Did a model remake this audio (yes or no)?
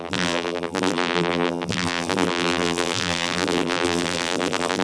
yes